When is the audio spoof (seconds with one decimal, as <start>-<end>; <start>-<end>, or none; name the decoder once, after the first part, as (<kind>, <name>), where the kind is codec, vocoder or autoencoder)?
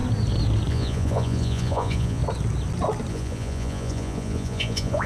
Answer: 0.7-2.2 (vocoder, Vocos); 3.1-5.1